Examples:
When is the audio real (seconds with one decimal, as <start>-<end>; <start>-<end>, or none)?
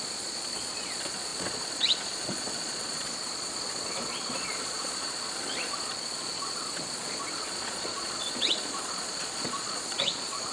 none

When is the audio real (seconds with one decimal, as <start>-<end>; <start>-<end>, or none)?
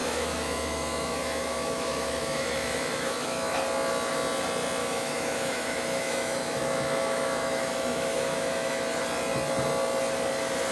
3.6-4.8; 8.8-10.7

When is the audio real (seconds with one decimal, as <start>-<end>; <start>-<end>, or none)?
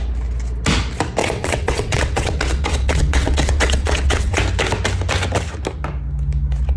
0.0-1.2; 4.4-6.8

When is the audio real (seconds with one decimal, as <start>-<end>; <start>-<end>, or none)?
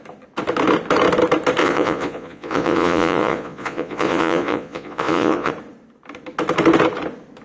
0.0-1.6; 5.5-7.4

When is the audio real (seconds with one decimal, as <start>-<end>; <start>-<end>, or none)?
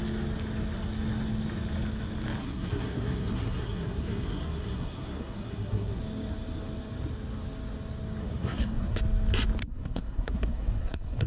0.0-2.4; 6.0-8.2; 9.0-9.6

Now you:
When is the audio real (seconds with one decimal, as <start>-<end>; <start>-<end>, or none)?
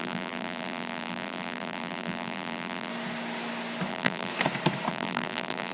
2.9-3.9; 4.3-4.9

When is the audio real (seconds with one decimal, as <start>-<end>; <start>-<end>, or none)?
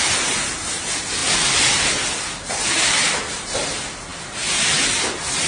0.0-5.5